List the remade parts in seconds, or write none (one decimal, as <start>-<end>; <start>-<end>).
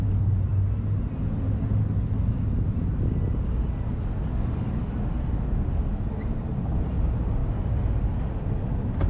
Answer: none